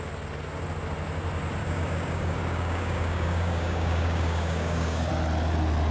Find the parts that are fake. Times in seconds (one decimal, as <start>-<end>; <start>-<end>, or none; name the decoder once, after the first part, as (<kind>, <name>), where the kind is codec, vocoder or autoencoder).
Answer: 1.6-5.1 (codec, DAC)